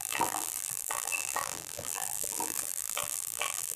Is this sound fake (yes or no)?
yes